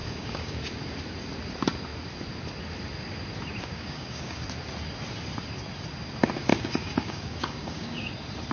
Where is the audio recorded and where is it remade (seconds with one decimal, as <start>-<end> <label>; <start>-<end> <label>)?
0.0-0.6 remade; 0.6-3.6 recorded; 3.6-4.4 remade; 4.4-6.5 recorded; 6.5-8.1 remade; 8.1-8.5 recorded